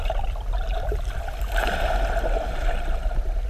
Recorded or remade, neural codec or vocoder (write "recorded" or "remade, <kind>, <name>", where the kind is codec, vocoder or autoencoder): recorded